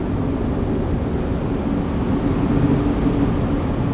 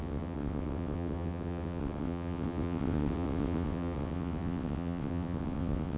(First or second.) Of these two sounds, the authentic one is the first